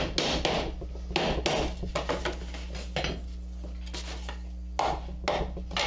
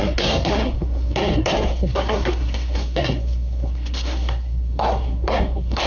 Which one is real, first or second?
first